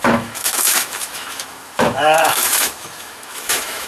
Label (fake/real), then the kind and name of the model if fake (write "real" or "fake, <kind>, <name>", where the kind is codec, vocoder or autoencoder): fake, autoencoder, DAC-VAE